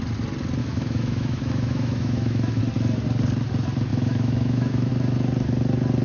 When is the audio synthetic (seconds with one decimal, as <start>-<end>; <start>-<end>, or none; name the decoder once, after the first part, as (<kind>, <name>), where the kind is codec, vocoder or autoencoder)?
0.6-2.6 (autoencoder, DAC-VAE); 3.9-4.9